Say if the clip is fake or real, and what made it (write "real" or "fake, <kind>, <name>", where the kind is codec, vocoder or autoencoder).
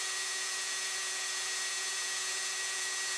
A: fake, vocoder, Vocos